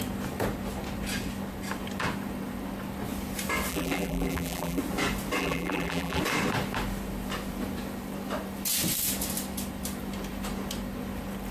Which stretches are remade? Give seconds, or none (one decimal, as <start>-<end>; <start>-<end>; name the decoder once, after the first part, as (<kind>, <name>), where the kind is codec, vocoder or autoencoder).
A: 3.7-4.8 (vocoder, BigVGAN v2); 5.4-6.2